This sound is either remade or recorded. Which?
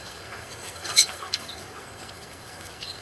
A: remade